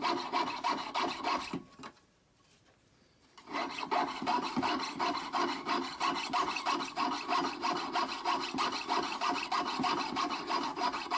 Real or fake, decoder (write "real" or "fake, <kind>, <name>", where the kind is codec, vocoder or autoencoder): real